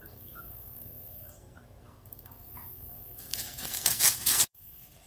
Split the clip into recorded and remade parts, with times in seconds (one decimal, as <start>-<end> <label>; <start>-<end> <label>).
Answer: 0.0-5.1 remade